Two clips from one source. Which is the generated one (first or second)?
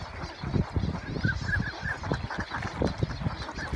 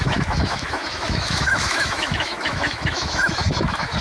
second